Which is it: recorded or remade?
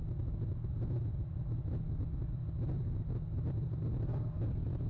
recorded